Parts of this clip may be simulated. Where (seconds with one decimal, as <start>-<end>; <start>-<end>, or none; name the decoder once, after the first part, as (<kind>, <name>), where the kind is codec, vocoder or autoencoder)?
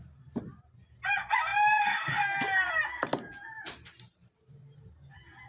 1.5-4.8 (vocoder, BigVGAN v2)